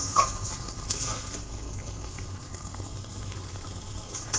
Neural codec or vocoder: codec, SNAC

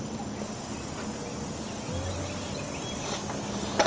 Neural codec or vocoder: none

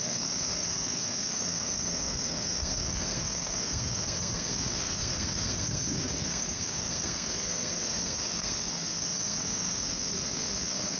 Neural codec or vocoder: codec, SNAC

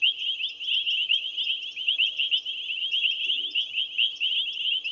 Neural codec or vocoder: none